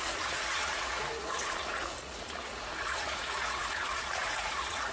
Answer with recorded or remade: remade